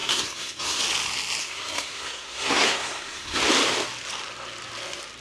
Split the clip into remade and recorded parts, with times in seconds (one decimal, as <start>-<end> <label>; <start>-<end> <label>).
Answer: 0.0-0.8 remade; 0.8-1.4 recorded; 1.4-3.4 remade; 3.4-5.2 recorded